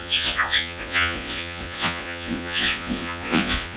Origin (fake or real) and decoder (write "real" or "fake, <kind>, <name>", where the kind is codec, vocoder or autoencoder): fake, vocoder, Vocos